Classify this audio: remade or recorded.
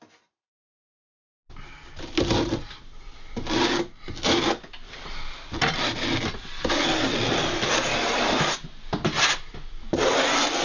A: recorded